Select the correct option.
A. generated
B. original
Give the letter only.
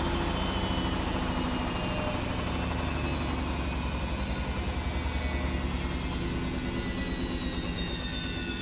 B